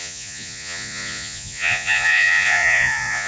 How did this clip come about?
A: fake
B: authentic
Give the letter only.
A